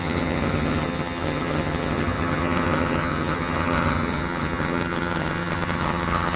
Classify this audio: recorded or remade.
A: remade